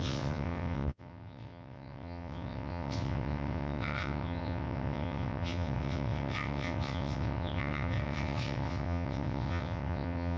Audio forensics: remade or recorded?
remade